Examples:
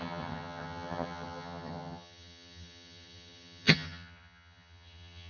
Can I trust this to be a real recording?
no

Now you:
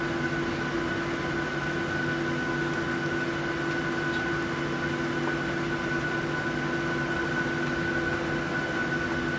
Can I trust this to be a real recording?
yes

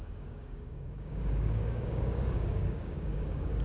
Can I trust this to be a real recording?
no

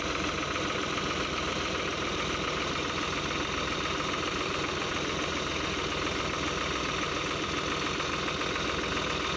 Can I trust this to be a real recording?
yes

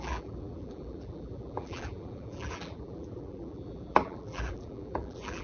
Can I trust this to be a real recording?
no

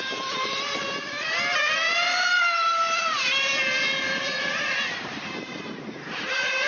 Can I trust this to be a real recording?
no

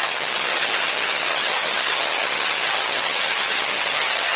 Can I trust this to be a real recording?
no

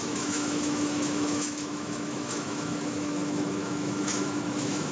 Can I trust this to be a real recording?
no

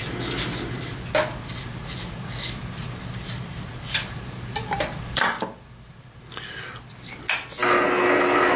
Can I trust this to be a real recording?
yes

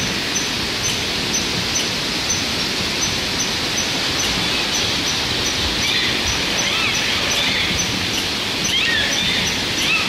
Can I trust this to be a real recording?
yes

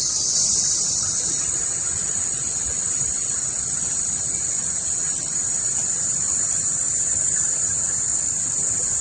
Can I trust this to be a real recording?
no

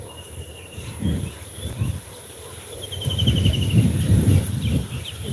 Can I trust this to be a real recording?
no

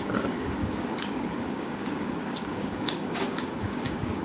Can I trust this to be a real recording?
no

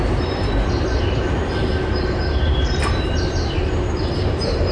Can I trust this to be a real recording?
no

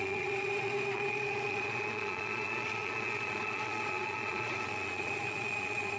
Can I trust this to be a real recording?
no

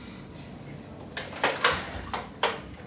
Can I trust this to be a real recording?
yes